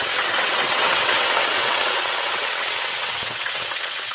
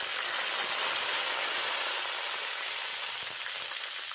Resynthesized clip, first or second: first